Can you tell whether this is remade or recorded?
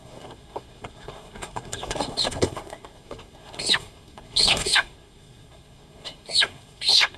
remade